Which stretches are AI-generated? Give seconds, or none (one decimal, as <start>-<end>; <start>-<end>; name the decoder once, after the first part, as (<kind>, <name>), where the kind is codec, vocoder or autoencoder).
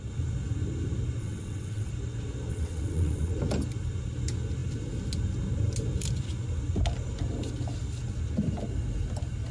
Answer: 1.2-1.9 (vocoder, WaveNeXt); 2.5-3.3